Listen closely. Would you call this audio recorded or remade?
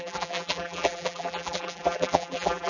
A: remade